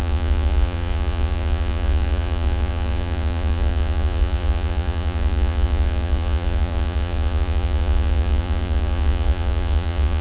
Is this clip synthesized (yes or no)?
yes